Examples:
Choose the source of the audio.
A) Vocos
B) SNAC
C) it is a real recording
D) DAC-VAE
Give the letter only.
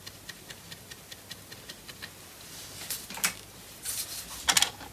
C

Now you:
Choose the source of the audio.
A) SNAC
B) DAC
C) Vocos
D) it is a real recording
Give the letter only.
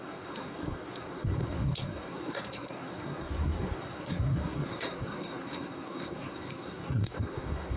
A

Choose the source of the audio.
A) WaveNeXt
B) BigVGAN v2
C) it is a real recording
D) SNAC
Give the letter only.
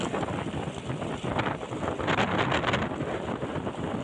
C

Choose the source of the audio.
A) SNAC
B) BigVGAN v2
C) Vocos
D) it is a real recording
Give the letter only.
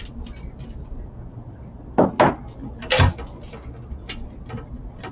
D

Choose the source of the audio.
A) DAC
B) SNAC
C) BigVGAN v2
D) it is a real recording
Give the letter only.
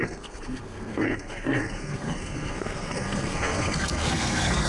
B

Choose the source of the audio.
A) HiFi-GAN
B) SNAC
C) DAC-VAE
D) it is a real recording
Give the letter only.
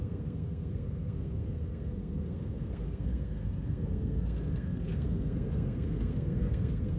B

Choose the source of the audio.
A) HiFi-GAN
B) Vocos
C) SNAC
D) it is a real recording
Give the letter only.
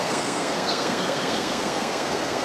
C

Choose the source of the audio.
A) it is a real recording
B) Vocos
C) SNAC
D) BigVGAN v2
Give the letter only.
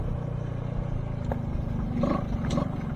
A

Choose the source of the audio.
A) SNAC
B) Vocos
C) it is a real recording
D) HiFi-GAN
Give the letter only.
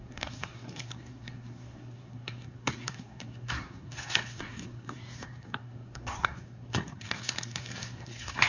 A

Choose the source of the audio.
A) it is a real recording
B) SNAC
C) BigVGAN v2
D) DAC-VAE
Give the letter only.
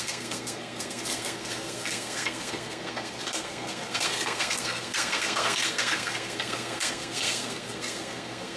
B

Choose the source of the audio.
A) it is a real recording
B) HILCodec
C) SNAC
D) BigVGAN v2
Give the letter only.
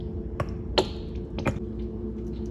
A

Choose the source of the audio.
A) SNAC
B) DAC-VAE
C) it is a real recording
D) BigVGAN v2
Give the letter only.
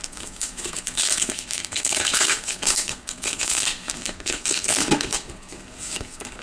A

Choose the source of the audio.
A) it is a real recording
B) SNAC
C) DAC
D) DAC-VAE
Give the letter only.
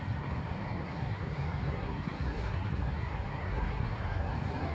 B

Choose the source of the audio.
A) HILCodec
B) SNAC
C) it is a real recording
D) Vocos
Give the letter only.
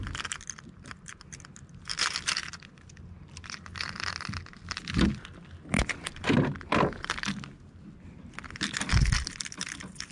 C